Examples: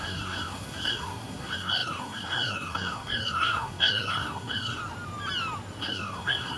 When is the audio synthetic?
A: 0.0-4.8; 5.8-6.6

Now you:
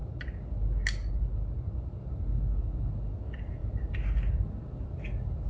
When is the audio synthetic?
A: none

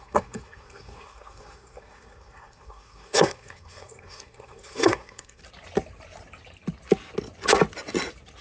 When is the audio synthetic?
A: 0.0-5.4

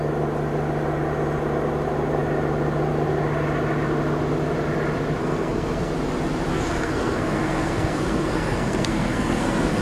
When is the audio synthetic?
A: 5.2-5.9; 6.5-9.8

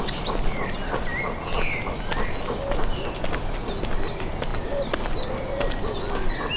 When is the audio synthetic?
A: none

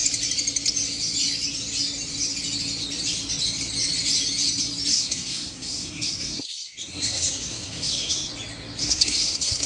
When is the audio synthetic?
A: 4.9-8.3; 8.8-9.7